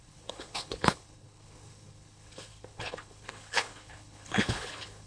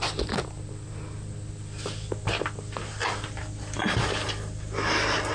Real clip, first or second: second